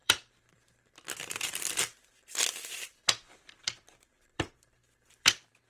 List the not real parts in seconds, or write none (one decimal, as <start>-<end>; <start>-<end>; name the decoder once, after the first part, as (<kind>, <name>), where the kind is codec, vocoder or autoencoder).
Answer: 0.0-5.7 (vocoder, BigVGAN v2)